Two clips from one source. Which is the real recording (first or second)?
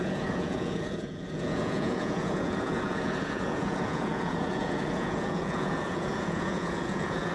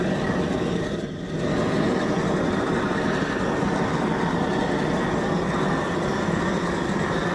second